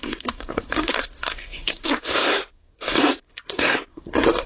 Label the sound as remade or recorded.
remade